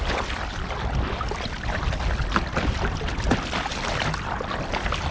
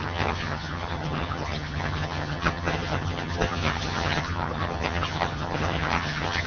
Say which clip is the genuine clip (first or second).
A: first